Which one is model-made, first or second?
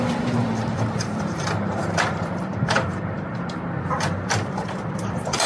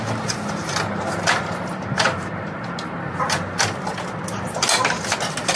first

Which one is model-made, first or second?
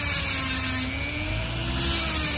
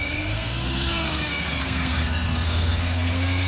second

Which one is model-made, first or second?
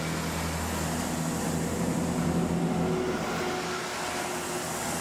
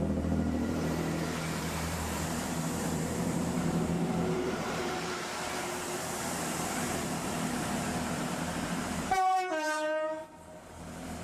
second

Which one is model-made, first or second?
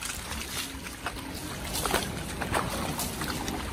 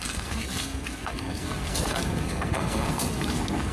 second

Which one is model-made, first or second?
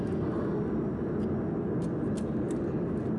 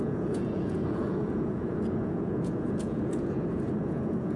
second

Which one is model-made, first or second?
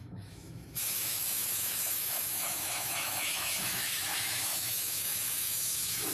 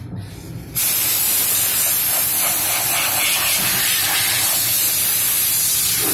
first